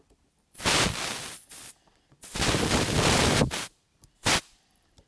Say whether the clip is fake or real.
fake